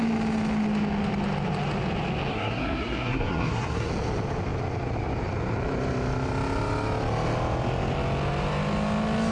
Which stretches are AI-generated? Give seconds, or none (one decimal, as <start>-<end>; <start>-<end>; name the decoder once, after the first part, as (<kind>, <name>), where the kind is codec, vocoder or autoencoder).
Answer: 2.3-3.9 (codec, SNAC)